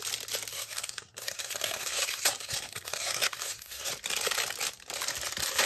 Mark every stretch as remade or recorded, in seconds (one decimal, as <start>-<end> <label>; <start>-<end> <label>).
0.0-0.5 recorded; 0.5-3.9 remade; 3.9-5.7 recorded